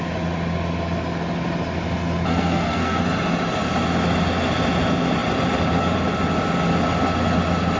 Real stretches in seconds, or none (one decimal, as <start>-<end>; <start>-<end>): 0.0-2.3; 3.0-7.8